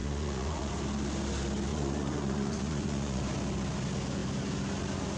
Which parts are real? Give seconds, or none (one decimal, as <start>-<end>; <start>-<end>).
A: 0.7-1.7; 3.2-5.2